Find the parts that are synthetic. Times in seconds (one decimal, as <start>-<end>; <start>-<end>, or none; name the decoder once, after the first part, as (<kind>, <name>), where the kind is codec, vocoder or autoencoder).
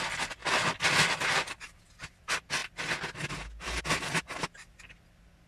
none